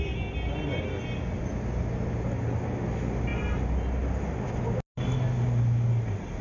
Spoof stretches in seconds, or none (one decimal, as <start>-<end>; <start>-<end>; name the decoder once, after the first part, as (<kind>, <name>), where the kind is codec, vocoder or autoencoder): none